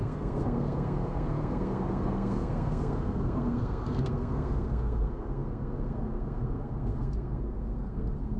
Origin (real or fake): fake